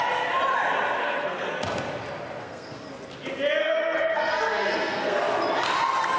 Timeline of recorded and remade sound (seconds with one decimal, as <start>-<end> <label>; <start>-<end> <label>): 0.0-1.0 recorded; 1.0-1.5 remade; 1.5-2.4 recorded; 2.4-2.9 remade; 2.9-3.6 recorded; 3.6-5.2 remade; 5.2-6.2 recorded